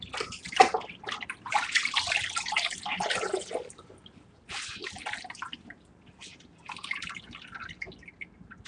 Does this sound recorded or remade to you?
recorded